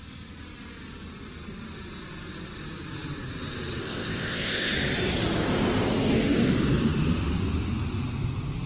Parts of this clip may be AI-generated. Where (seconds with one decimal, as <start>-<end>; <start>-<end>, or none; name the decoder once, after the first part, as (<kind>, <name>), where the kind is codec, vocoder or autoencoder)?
3.8-4.7 (codec, ZipCodec)